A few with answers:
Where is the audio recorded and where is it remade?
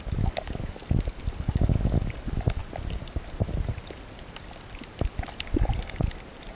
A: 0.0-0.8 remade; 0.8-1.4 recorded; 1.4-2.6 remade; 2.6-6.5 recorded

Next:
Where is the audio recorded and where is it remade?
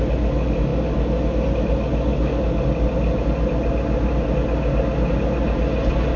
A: 0.0-6.2 recorded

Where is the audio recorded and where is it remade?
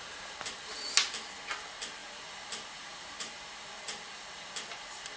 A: 0.0-2.0 recorded; 2.0-5.2 remade